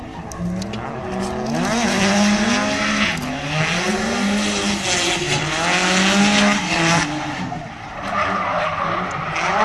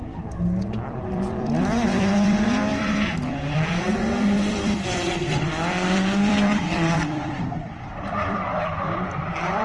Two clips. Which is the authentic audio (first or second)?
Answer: first